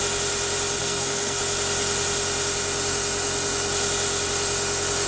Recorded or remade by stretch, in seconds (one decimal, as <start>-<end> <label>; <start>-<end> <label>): 0.0-0.8 recorded; 0.8-1.4 remade; 1.4-5.1 recorded